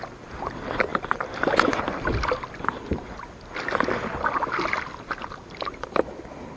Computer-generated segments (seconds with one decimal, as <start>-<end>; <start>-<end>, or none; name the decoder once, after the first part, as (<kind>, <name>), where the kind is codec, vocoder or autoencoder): none